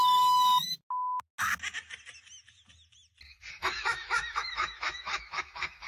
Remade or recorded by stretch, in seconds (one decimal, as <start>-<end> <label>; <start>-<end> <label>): 0.0-0.8 remade; 0.8-3.5 recorded; 3.5-5.9 remade